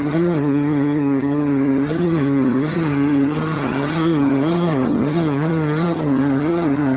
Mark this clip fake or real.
fake